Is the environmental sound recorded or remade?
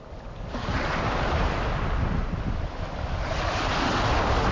recorded